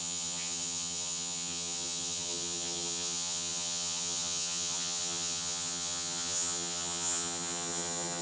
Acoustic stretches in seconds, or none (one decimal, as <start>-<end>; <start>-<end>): none